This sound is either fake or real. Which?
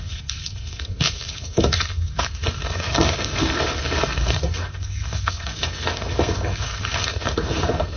fake